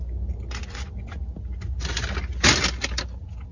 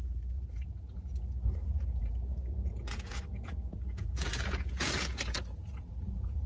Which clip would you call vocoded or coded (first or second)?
second